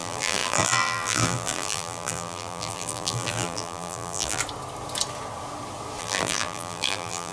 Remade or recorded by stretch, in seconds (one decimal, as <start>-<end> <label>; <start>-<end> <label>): 0.0-4.4 remade; 4.4-6.0 recorded; 6.0-7.3 remade